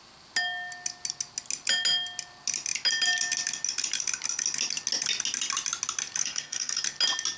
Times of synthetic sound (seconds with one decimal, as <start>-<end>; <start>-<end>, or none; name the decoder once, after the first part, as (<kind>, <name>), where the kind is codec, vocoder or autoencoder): 6.2-6.8 (codec, SNAC)